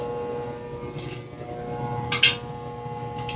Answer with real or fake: real